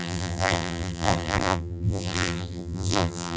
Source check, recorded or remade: remade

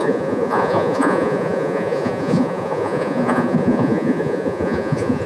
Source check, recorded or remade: remade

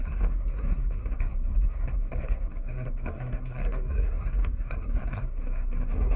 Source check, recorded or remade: remade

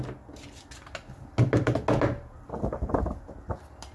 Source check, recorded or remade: recorded